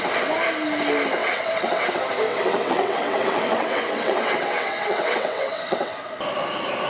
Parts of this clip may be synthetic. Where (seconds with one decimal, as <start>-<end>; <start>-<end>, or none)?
1.2-1.9; 2.3-5.9